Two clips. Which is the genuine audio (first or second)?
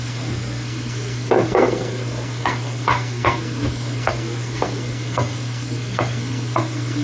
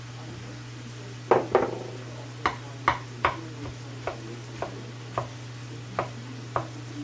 second